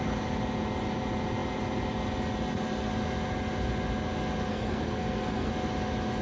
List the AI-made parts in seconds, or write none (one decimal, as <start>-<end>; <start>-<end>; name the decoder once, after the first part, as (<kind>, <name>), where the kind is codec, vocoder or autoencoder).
4.5-5.5 (codec, SNAC)